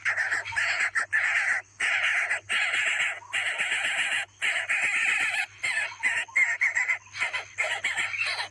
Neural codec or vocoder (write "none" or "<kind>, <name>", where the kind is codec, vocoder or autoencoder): none